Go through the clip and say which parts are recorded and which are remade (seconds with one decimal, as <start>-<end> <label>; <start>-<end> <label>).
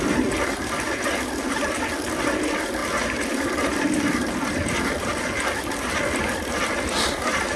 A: 0.0-7.6 recorded